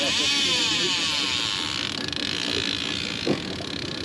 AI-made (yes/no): no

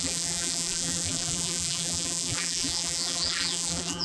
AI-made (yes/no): yes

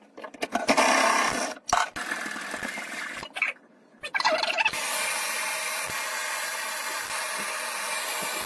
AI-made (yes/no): no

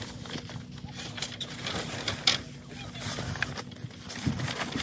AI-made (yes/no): no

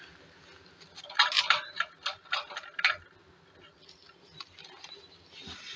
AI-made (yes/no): no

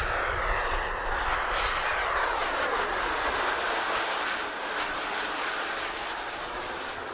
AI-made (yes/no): yes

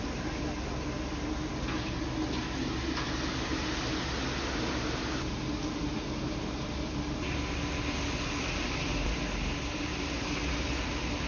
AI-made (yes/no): no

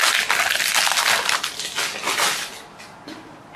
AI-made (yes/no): no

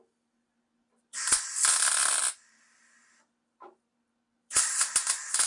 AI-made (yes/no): yes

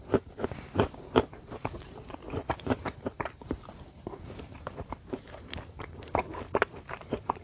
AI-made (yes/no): yes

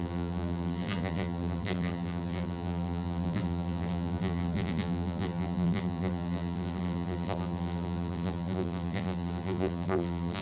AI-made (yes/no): yes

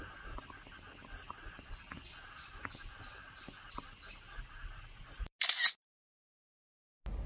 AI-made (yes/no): no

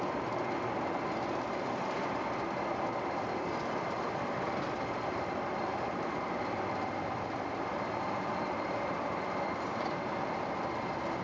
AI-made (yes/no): yes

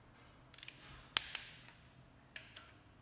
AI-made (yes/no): no